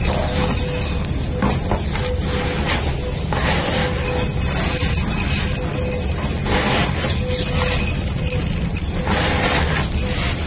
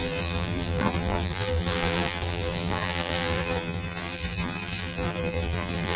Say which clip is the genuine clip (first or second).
first